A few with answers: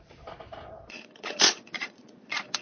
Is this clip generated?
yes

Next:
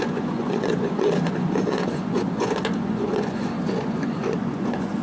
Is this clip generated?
yes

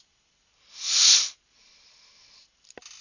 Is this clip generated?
no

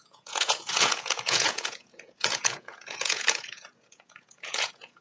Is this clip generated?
yes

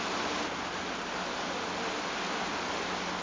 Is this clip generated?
no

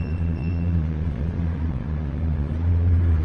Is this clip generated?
yes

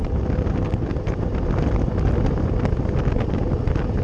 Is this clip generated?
no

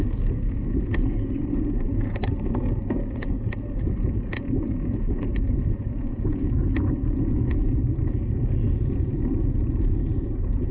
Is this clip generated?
yes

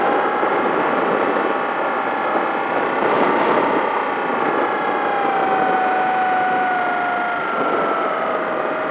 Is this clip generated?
no